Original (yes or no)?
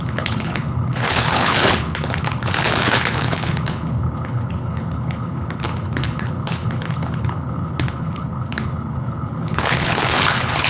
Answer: no